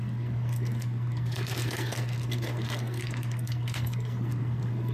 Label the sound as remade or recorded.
remade